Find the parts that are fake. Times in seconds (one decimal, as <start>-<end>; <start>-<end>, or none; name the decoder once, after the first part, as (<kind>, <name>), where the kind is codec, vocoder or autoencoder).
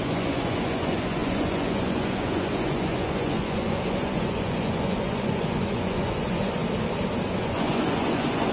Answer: 0.0-6.6 (vocoder, Vocos); 7.4-8.5